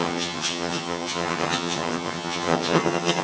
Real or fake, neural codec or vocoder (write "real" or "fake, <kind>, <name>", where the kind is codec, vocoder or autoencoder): fake, vocoder, HiFi-GAN